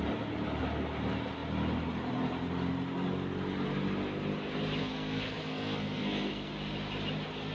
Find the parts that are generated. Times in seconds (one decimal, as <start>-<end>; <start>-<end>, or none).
4.8-6.5